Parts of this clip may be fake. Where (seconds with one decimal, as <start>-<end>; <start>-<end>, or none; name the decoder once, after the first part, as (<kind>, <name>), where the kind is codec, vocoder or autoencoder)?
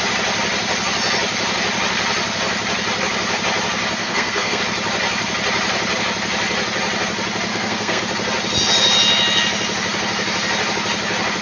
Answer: 4.0-4.6 (codec, SNAC); 7.5-8.0